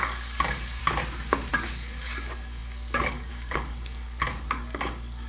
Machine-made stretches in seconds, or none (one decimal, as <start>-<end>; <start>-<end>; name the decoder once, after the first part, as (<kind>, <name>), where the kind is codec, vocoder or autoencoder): 0.0-0.8 (codec, DAC); 1.5-5.3